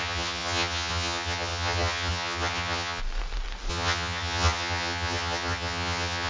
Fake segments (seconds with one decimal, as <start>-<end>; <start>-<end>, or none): 0.0-3.0; 3.7-6.3

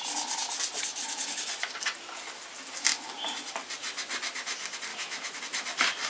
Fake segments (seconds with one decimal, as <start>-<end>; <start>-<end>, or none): 4.9-5.4

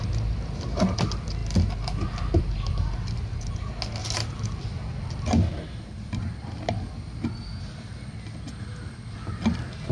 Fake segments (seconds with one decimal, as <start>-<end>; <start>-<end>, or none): 4.0-4.5